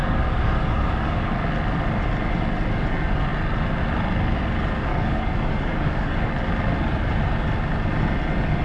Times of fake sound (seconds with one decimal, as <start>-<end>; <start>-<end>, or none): 0.0-1.3; 4.9-6.3

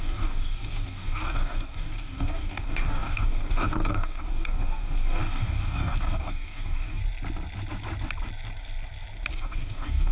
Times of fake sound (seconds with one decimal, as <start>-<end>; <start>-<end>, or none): 0.0-7.0; 9.3-10.1

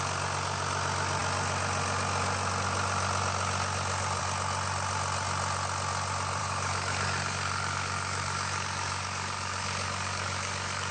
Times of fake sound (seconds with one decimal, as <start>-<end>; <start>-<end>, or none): 6.4-10.9

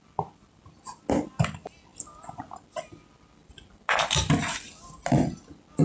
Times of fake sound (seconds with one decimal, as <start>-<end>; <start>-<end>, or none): none

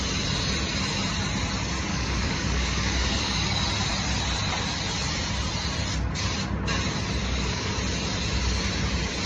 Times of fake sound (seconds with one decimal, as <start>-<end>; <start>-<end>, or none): 1.9-3.6; 7.2-7.7

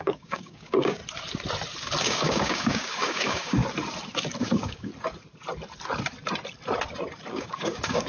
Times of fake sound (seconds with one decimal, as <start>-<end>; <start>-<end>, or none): 0.0-1.0; 2.0-3.6; 4.4-4.9; 7.3-8.1